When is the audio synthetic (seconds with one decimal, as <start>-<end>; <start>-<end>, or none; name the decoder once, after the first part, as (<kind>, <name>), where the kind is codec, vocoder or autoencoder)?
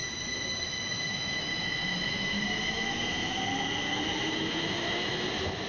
0.0-3.4 (autoencoder, DAC-VAE); 3.8-5.3